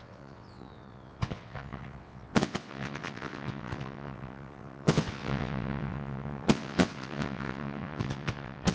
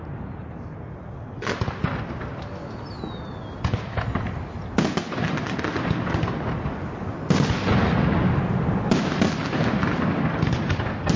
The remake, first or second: first